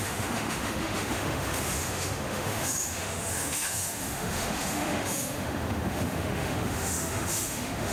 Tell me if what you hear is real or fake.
fake